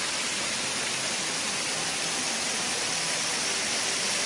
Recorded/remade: recorded